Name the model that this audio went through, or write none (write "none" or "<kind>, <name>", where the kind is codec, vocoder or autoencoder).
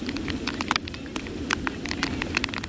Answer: none